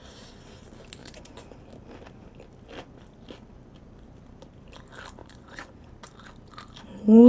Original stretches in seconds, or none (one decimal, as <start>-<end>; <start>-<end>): 0.0-1.0; 1.5-5.2; 5.9-7.3